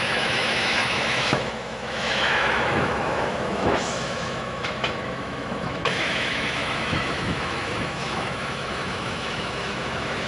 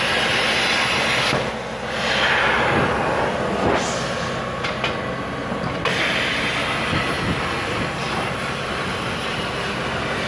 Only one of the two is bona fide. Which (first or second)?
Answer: second